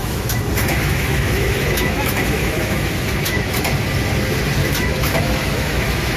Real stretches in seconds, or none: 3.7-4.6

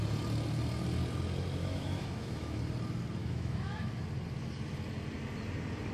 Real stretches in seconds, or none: 0.0-1.6; 2.6-3.2; 3.9-5.9

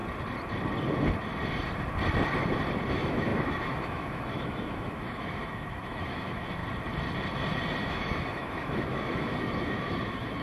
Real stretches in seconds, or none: 0.0-2.9; 6.6-7.8

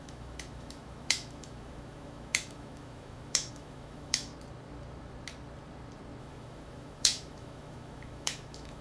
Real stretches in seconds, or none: 4.3-6.2

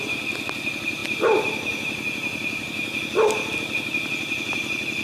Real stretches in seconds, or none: 0.0-5.0

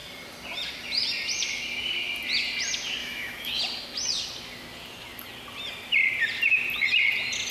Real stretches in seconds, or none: 0.0-3.0; 3.6-7.5

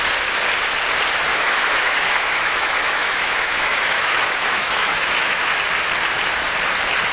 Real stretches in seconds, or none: 0.0-1.3; 5.6-7.1

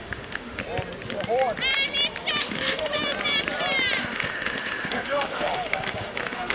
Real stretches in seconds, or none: 0.6-2.4; 2.9-4.0